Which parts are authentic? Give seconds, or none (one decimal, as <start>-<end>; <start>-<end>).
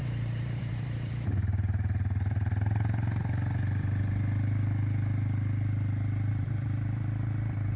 2.5-6.3